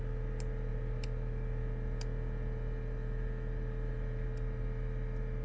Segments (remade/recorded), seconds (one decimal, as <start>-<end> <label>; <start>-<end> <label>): 0.0-5.4 recorded